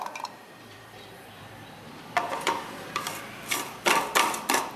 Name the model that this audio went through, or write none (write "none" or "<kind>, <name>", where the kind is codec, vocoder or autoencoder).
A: vocoder, BigVGAN v2